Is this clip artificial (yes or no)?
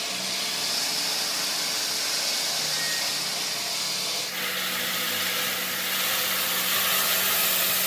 no